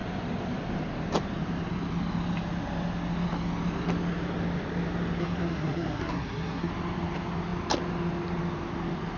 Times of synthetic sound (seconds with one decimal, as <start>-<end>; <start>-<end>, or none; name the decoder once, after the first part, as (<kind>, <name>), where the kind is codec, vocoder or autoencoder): 5.2-6.7 (codec, SNAC)